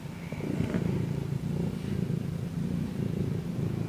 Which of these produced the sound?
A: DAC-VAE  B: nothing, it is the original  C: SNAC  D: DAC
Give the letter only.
B